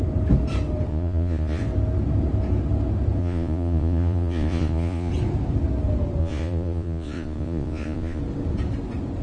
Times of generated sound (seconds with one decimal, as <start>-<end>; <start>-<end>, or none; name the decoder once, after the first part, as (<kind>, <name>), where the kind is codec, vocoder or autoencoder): 0.9-1.6 (vocoder, Vocos); 3.2-5.1; 6.2-8.2